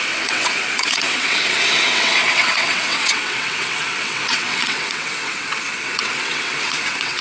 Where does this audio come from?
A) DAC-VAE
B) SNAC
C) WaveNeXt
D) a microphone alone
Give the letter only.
C